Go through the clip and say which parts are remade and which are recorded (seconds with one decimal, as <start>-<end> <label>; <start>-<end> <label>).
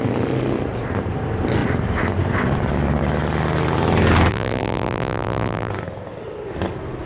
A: 0.0-4.3 recorded; 4.3-5.7 remade; 5.7-7.1 recorded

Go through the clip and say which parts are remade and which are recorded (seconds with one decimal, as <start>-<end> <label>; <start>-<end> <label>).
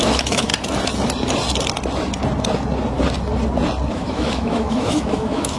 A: 0.0-0.5 remade; 0.5-3.9 recorded; 3.9-5.6 remade